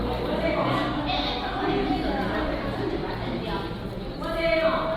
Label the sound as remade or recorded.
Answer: recorded